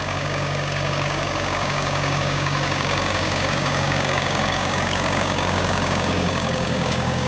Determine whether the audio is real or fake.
fake